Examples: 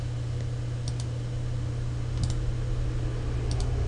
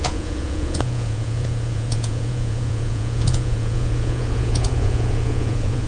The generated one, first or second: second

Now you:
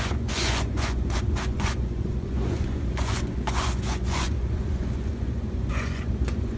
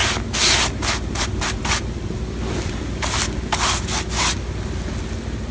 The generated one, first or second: first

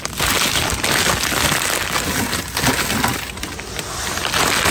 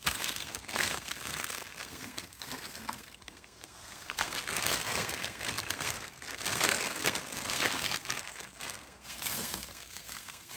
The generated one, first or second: second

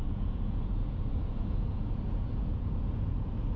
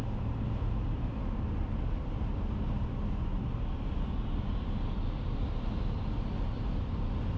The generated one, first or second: first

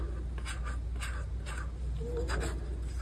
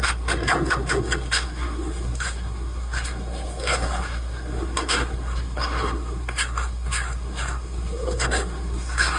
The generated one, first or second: second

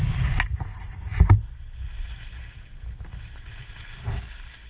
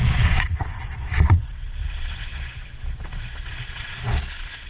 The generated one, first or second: second